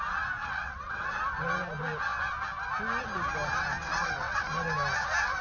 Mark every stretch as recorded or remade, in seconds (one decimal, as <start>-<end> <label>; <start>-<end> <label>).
0.0-0.4 recorded; 0.4-1.1 remade; 1.1-3.8 recorded; 3.8-4.4 remade; 4.4-5.4 recorded